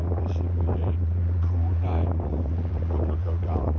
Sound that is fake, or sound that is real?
fake